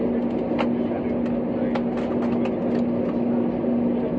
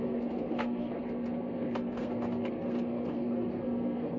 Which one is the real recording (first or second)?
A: first